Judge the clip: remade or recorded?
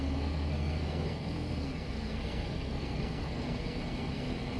remade